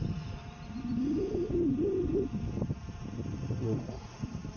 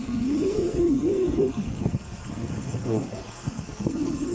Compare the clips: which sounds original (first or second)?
first